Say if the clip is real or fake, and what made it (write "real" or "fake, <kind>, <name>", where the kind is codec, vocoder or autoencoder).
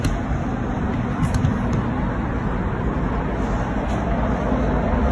real